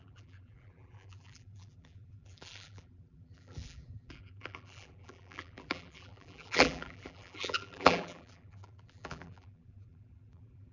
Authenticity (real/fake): fake